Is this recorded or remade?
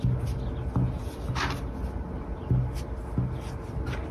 recorded